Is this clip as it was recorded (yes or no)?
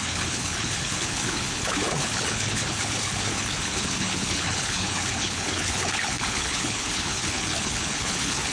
no